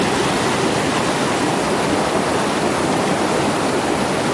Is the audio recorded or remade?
recorded